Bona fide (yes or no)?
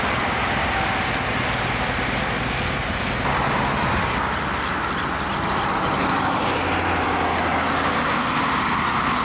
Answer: yes